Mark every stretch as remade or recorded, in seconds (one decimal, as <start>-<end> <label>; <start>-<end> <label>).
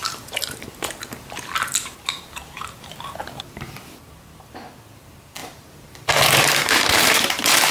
0.0-1.7 recorded; 1.7-3.2 remade; 3.2-5.4 recorded; 5.4-7.7 remade